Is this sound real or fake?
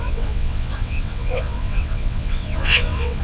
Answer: fake